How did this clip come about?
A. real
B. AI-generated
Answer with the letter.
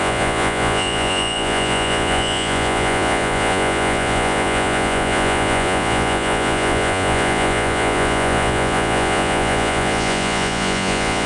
B